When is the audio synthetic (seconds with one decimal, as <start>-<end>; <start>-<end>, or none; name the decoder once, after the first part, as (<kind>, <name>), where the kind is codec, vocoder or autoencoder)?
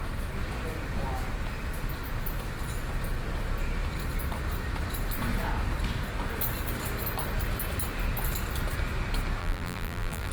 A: 9.4-10.3 (vocoder, BigVGAN v2)